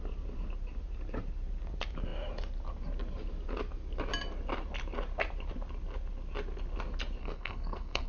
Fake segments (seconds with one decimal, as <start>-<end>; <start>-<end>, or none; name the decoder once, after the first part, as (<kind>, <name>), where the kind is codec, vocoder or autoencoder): 7.2-8.1 (codec, SNAC)